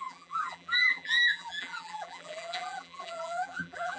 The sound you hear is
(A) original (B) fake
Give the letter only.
B